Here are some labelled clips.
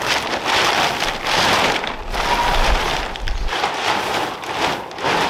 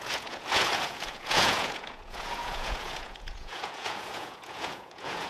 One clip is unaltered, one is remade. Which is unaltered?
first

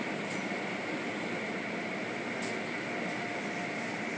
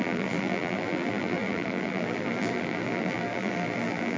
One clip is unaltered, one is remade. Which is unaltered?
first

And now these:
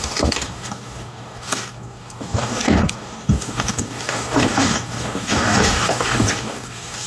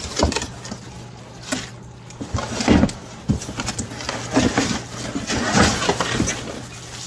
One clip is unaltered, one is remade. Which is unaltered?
second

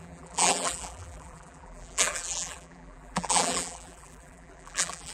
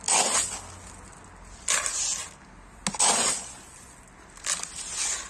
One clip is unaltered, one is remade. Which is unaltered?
second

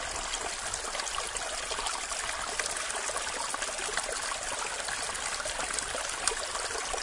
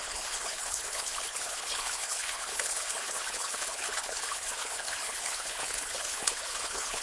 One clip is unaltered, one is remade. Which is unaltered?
first